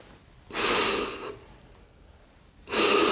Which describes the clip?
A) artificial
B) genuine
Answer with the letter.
B